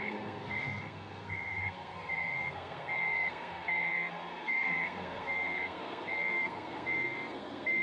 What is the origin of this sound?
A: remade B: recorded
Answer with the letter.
A